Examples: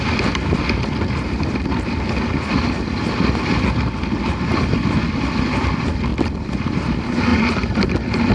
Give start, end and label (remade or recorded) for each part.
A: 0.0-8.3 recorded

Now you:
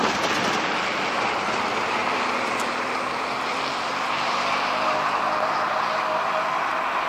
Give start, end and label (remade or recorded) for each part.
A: 0.0-7.1 recorded

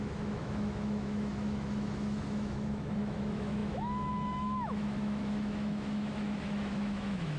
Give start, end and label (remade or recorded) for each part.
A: 0.0-7.4 remade

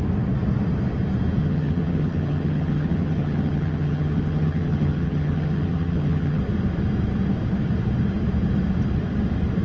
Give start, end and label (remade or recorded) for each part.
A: 0.0-1.4 recorded; 1.4-6.4 remade; 6.4-9.6 recorded